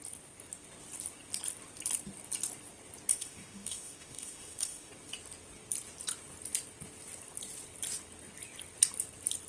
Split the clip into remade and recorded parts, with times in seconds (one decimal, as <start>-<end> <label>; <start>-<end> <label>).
0.0-3.1 recorded; 3.1-4.9 remade; 4.9-9.5 recorded